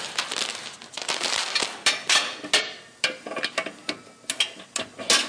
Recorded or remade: recorded